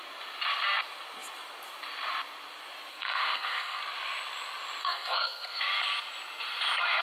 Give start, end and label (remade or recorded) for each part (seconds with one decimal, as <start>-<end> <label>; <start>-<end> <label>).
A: 0.0-2.9 recorded; 2.9-3.8 remade; 3.8-4.8 recorded; 4.8-5.6 remade; 5.6-7.0 recorded